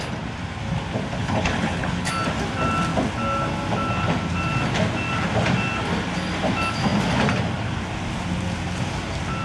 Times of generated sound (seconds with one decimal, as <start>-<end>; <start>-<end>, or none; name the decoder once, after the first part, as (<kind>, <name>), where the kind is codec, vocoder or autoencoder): 1.2-2.1 (codec, HILCodec)